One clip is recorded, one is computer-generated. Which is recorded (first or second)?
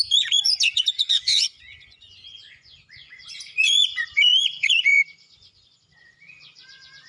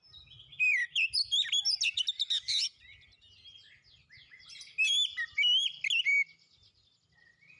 second